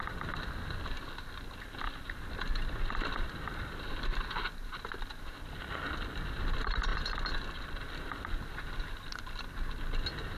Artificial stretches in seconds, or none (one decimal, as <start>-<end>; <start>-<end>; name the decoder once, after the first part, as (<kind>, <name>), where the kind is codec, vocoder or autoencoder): none